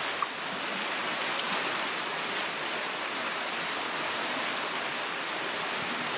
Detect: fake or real real